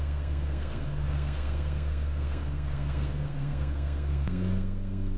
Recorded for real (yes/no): no